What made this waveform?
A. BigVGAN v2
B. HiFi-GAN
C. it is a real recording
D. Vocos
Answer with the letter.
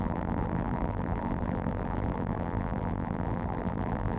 A